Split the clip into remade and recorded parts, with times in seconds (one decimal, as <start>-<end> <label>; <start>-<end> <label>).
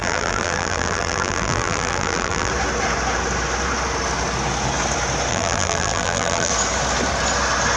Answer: 0.0-2.5 remade; 2.5-5.3 recorded; 5.3-6.5 remade; 6.5-7.8 recorded